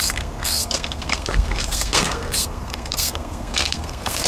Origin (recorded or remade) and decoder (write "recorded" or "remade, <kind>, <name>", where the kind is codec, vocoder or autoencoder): remade, codec, SNAC